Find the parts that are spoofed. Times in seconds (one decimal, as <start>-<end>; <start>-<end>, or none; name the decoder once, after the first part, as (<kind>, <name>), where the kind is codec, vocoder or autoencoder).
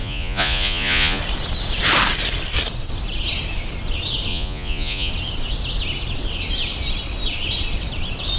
0.0-1.2 (vocoder, Vocos); 4.3-5.1